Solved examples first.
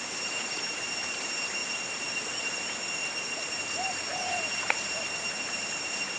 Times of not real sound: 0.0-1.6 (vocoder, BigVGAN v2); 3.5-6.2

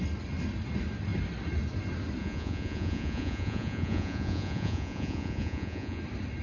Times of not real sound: 2.2-6.0 (vocoder, Vocos)

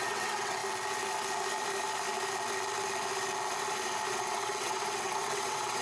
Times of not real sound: 0.0-0.6 (vocoder, WaveNeXt); 4.1-5.8

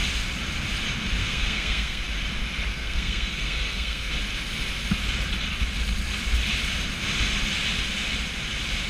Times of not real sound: 1.2-2.0 (codec, SNAC); 2.7-4.1

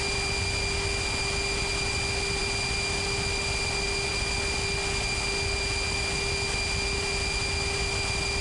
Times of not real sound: none